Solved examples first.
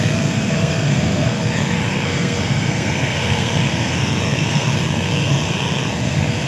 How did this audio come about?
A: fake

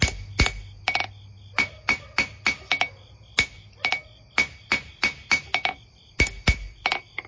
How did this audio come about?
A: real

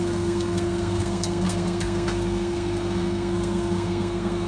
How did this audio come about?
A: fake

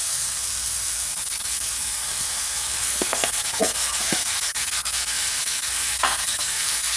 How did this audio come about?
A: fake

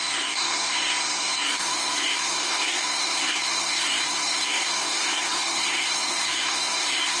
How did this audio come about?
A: fake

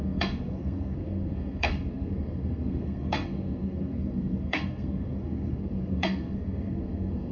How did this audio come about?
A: fake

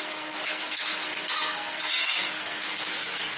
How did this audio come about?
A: fake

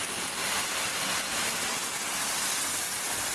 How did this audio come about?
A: real